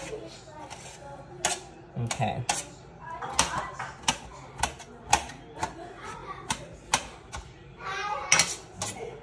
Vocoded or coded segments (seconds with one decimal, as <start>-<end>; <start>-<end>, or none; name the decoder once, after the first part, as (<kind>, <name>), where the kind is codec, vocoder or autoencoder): none